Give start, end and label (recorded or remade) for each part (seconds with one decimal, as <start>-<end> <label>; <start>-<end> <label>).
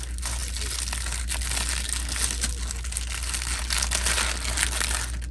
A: 0.0-5.3 recorded